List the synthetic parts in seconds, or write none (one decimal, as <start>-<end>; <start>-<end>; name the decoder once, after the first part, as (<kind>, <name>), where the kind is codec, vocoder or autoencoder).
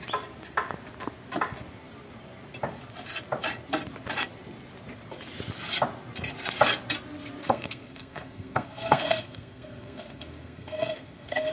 7.4-11.5 (codec, SNAC)